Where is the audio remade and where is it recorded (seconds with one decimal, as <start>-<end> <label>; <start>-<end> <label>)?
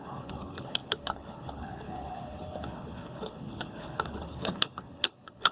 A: 0.0-5.5 remade